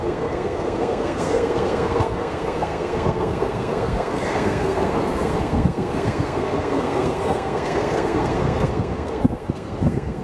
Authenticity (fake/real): fake